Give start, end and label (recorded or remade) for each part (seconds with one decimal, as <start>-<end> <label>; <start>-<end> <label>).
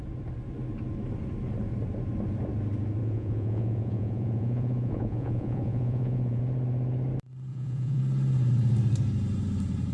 0.0-3.0 recorded; 3.0-6.4 remade; 6.4-7.5 recorded; 7.5-8.0 remade; 8.0-9.9 recorded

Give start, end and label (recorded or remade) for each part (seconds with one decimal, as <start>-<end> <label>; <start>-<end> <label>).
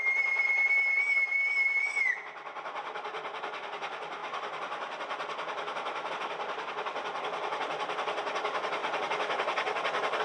0.0-10.2 recorded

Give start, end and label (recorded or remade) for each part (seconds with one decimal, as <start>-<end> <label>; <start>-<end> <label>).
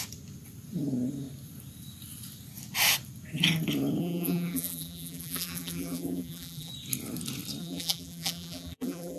0.0-4.0 recorded; 4.0-6.7 remade; 6.7-7.6 recorded; 7.6-9.2 remade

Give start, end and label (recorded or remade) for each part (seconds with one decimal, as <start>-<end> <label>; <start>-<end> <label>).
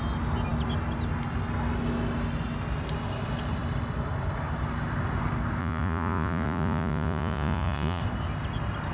0.0-5.6 recorded; 5.6-8.0 remade; 8.0-8.9 recorded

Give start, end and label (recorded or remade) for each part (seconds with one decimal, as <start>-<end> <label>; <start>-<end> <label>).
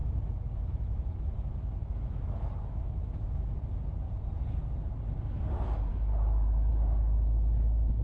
0.0-3.4 remade; 3.4-8.0 recorded